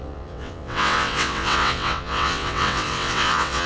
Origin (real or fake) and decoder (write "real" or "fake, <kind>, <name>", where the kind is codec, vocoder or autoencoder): fake, vocoder, WaveNeXt